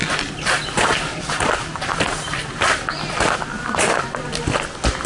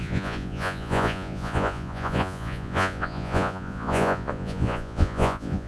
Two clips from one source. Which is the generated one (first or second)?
second